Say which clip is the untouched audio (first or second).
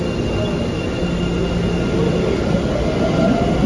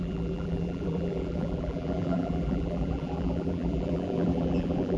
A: first